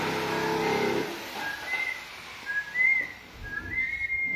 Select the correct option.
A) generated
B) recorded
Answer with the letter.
B